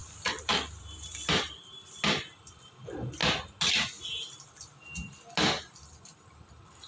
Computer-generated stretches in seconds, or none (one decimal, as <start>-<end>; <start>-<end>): 0.0-1.9